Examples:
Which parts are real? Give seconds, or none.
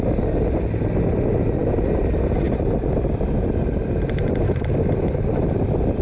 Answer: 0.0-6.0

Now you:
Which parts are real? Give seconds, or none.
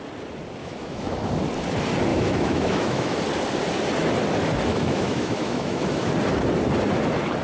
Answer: 0.0-0.6; 1.3-2.1; 3.2-4.7; 6.1-7.4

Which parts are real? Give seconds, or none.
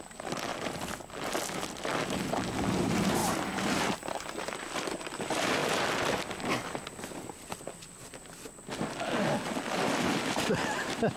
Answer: 0.5-2.7; 5.6-10.3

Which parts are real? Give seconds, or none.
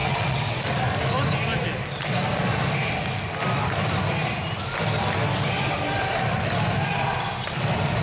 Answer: 0.6-8.0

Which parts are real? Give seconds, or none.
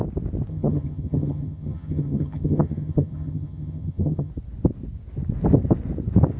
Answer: 0.0-0.5; 4.3-6.4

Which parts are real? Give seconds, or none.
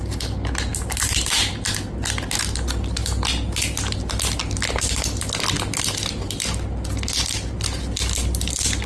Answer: 0.0-8.9